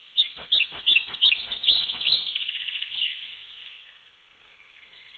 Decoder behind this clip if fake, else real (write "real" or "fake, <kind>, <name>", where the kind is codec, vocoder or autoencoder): fake, codec, SNAC